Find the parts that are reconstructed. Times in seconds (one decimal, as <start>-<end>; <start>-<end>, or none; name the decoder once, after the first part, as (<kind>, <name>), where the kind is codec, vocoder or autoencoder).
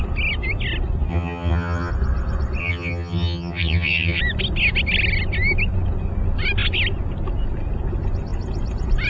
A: 1.1-1.9 (vocoder, HiFi-GAN); 2.6-4.2